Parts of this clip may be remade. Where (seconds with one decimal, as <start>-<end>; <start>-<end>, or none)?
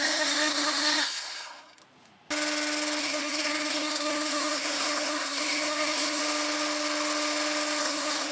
0.0-1.8; 3.0-6.2; 7.8-8.3